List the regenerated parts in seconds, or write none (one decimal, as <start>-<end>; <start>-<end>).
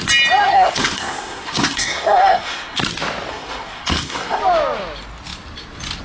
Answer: 0.5-2.8; 3.3-4.4